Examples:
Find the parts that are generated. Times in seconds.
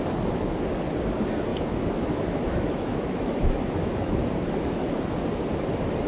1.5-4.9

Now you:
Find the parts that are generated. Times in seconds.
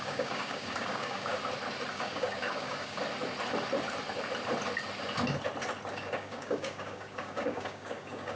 0.0-1.3; 1.9-3.0; 5.9-8.4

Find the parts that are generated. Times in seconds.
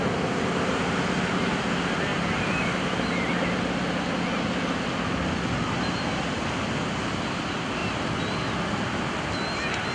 2.1-3.6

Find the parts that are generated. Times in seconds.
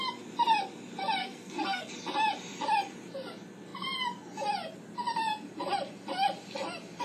1.2-1.9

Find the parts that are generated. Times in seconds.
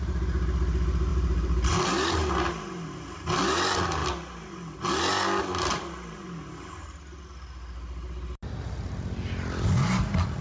1.1-1.7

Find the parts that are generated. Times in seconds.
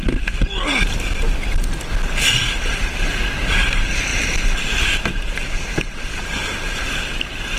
4.1-7.6